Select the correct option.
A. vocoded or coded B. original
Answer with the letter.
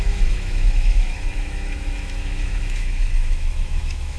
A